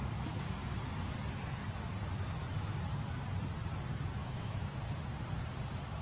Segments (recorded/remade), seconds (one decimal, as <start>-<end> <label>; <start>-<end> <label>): 0.0-4.2 recorded; 4.2-4.8 remade; 4.8-6.0 recorded